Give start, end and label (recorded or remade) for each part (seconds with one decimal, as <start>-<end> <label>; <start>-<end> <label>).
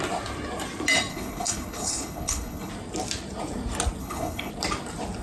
0.0-1.1 recorded; 1.1-2.7 remade; 2.7-4.0 recorded; 4.0-4.5 remade; 4.5-5.2 recorded